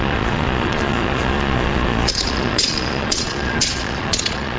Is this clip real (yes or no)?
no